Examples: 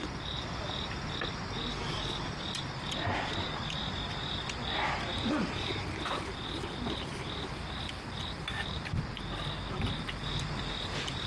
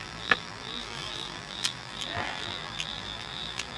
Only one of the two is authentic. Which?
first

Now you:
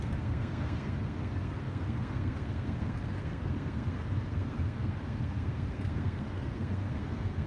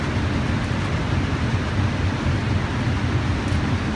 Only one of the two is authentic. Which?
second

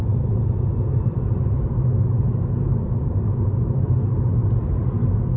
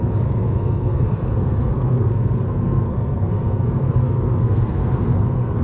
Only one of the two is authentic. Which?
first